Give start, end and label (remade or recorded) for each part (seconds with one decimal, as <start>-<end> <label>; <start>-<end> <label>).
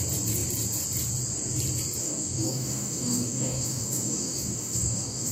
0.0-2.0 recorded; 2.0-5.3 remade